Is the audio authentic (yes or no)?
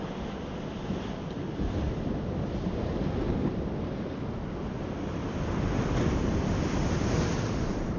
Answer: yes